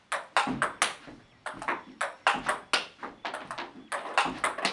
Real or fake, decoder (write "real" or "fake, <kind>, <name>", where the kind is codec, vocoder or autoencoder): real